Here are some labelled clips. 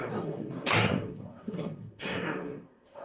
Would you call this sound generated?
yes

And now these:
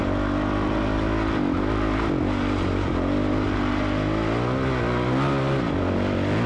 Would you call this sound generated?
no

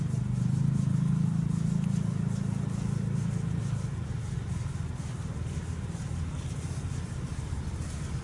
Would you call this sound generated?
no